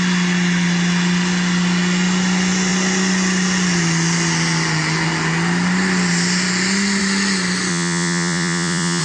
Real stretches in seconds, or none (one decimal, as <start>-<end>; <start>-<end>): 0.0-7.7